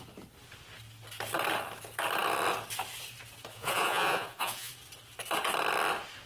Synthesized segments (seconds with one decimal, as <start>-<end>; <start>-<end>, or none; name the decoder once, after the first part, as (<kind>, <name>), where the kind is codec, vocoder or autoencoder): 3.5-4.7 (vocoder, Vocos)